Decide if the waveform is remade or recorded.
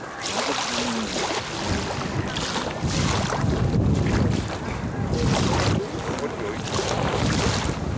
recorded